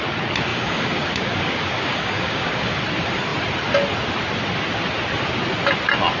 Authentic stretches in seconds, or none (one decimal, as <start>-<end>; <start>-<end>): 0.0-0.5; 2.8-6.2